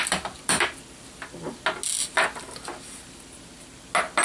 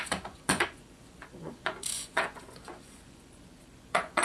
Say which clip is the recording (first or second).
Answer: first